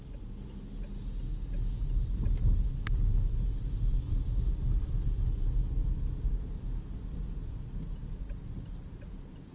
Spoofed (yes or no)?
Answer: no